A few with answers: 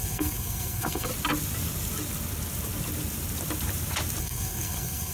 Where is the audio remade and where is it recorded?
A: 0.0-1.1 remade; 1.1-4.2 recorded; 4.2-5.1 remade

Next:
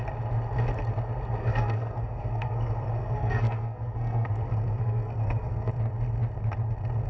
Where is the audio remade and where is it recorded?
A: 0.0-1.4 recorded; 1.4-5.7 remade; 5.7-7.1 recorded

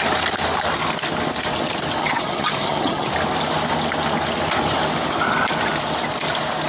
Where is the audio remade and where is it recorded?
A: 0.0-2.0 recorded; 2.0-3.1 remade; 3.1-6.7 recorded

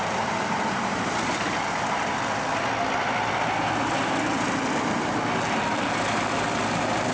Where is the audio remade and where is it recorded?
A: 0.0-2.0 remade; 2.0-7.1 recorded

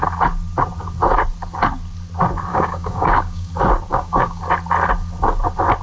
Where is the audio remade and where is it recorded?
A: 0.0-2.5 recorded; 2.5-3.5 remade; 3.5-3.9 recorded; 3.9-4.4 remade; 4.4-5.8 recorded

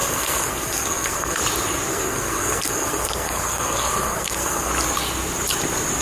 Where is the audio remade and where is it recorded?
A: 0.0-1.4 remade; 1.4-1.9 recorded; 1.9-4.7 remade; 4.7-6.0 recorded

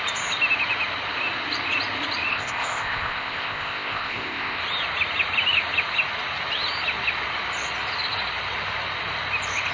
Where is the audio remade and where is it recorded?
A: 0.0-2.3 recorded; 2.3-4.6 remade; 4.6-9.7 recorded